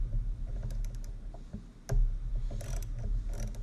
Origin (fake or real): real